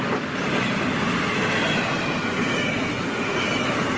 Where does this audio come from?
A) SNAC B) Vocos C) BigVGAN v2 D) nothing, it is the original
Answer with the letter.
D